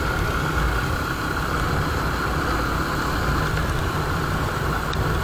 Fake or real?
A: real